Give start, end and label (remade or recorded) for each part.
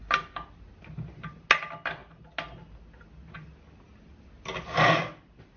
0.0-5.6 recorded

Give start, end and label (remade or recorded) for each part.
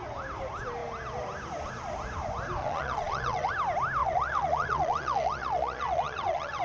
0.0-2.6 recorded; 2.6-3.5 remade; 3.5-4.0 recorded; 4.0-6.6 remade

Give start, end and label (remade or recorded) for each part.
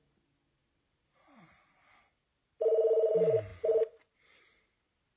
0.0-5.2 recorded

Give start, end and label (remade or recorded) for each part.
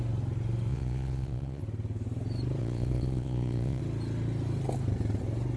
0.0-0.7 recorded; 0.7-1.6 remade; 1.6-2.6 recorded; 2.6-3.8 remade; 3.8-5.6 recorded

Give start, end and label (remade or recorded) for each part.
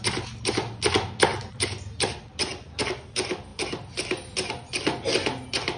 0.0-5.8 recorded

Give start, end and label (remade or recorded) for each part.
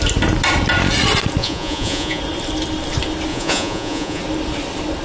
0.0-1.4 recorded; 1.4-2.2 remade; 2.2-3.3 recorded; 3.3-4.2 remade; 4.2-5.0 recorded